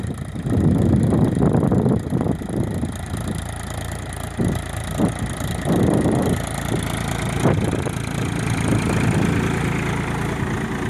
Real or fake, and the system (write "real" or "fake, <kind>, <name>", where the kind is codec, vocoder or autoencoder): real